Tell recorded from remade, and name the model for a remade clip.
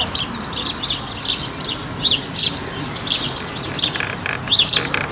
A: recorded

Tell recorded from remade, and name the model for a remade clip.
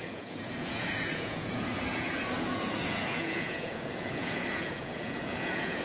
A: remade, vocoder, Vocos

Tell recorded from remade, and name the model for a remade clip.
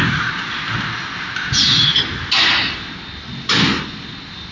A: recorded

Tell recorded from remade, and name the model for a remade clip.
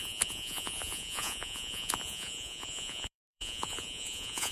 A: remade, vocoder, Vocos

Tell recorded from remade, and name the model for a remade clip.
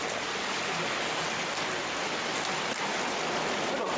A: recorded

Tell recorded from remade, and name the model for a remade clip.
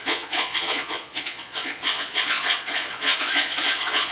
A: remade, vocoder, Vocos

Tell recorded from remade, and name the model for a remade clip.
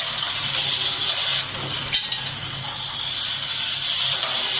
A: recorded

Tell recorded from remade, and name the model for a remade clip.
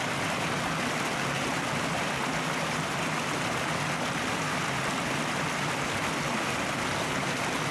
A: recorded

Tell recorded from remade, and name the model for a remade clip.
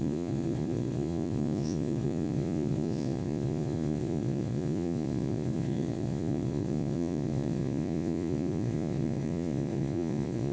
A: remade, vocoder, Vocos